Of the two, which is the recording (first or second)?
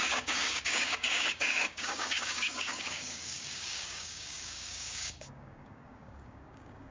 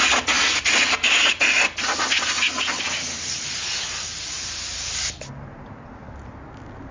second